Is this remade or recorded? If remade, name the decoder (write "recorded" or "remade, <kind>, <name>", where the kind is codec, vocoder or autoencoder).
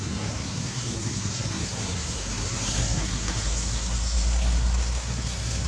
remade, codec, SNAC